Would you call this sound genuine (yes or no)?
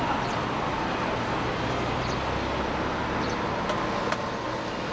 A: yes